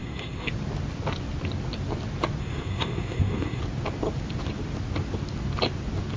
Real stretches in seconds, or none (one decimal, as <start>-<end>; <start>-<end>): 0.5-2.4; 3.6-6.2